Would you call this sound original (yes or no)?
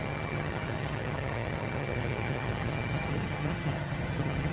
no